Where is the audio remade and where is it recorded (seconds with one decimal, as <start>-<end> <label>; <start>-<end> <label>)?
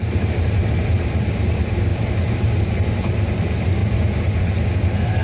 0.0-3.8 remade; 3.8-4.8 recorded; 4.8-5.2 remade